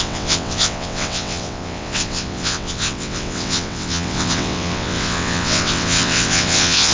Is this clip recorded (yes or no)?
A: no